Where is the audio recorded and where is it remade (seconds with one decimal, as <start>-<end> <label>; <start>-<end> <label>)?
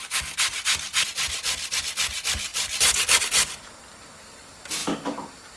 0.0-2.5 recorded; 2.5-3.2 remade; 3.2-4.8 recorded; 4.8-5.6 remade